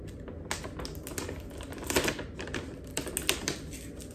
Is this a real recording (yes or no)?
yes